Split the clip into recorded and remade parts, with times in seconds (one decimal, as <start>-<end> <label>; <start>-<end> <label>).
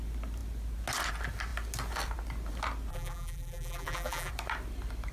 0.0-2.9 recorded; 2.9-4.3 remade; 4.3-5.1 recorded